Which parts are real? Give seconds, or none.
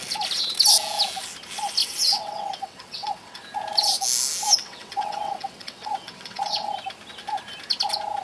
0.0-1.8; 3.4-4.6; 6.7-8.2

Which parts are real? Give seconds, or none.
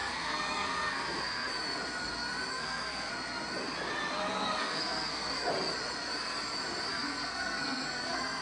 1.5-2.5; 3.1-4.6; 5.5-6.9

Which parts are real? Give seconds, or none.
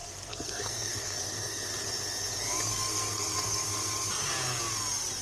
1.7-2.7; 4.0-5.2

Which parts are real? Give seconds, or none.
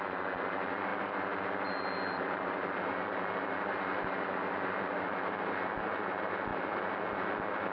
0.0-7.7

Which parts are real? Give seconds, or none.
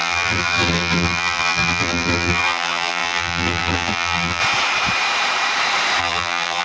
4.4-6.0